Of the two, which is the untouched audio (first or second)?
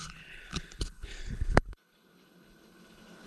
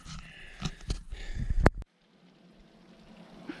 second